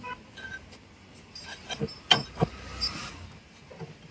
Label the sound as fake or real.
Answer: real